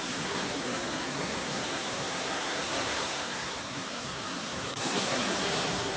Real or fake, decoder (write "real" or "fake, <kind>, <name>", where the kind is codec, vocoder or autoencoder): fake, codec, SNAC